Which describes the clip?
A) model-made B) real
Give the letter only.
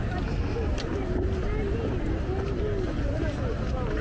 B